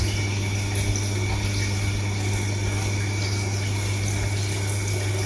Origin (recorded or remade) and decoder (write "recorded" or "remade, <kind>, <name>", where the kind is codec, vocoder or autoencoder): recorded